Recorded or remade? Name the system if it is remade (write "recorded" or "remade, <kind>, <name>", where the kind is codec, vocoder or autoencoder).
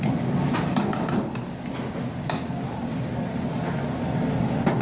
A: recorded